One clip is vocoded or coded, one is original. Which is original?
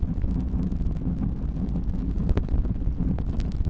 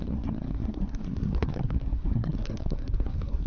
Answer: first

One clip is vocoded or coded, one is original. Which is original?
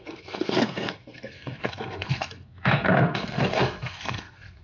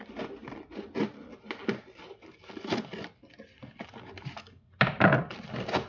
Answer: second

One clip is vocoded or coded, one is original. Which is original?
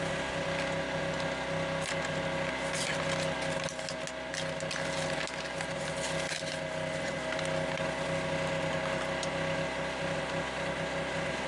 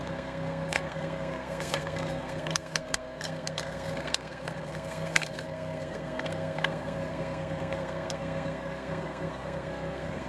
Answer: first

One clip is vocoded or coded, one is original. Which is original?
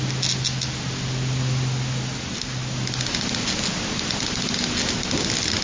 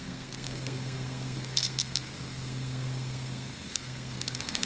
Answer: first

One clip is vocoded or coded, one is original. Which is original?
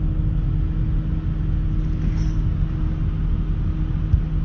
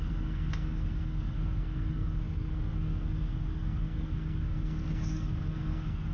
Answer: first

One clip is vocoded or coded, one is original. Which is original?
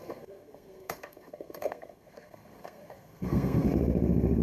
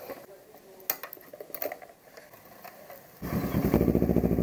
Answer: second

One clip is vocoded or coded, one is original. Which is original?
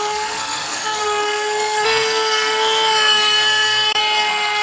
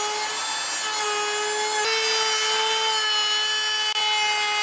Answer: second